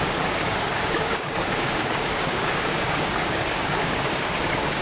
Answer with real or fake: fake